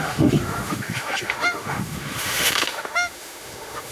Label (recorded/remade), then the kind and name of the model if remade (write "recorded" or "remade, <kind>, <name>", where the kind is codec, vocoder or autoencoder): remade, autoencoder, DAC-VAE